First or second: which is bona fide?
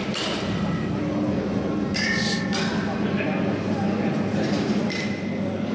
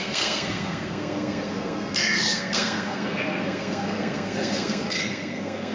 first